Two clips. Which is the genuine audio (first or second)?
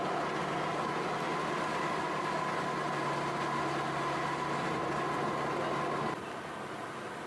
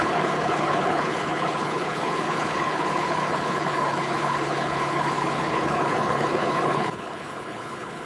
first